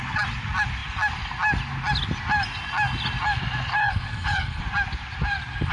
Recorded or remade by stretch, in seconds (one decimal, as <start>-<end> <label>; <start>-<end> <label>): 0.0-3.8 recorded; 3.8-4.6 remade; 4.6-5.7 recorded